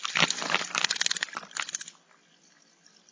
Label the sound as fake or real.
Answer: real